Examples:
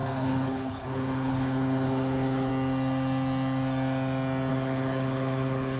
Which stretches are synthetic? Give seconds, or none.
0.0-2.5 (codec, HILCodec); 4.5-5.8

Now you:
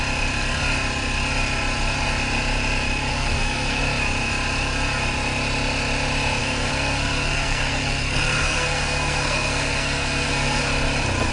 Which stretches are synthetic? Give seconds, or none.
3.1-3.8 (codec, SNAC); 6.4-10.6

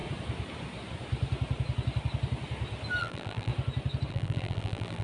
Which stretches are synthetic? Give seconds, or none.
3.0-3.5 (vocoder, BigVGAN v2); 4.1-5.0

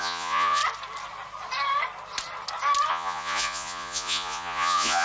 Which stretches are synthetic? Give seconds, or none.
0.0-0.6 (vocoder, Vocos); 2.9-5.0

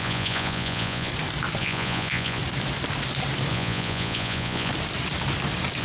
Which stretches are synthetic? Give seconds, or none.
0.0-1.1 (vocoder, Vocos); 1.6-2.4; 3.5-4.7

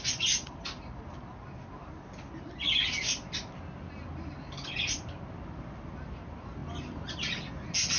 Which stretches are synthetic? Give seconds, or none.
none

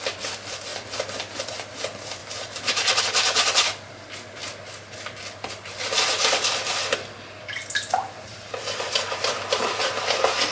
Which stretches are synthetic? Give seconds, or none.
2.2-3.0 (vocoder, BigVGAN v2); 8.3-9.4